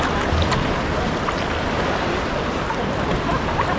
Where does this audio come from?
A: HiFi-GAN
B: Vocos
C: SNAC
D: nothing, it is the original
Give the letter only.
D